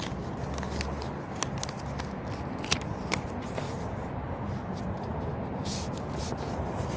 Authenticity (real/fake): real